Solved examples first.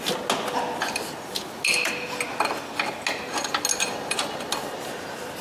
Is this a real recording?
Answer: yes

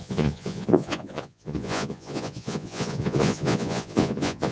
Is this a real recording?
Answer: no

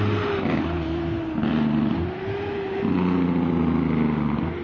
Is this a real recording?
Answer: yes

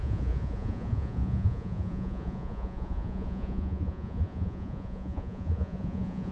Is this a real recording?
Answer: no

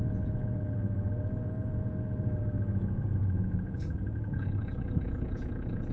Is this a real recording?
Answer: no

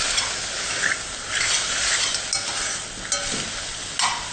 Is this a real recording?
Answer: yes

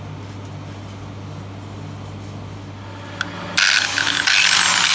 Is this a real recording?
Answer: yes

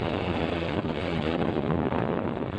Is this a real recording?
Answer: no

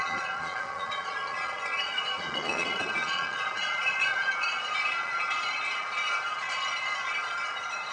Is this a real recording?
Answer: no